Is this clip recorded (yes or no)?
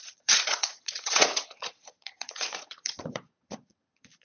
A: no